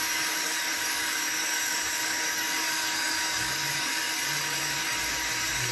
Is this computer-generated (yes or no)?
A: yes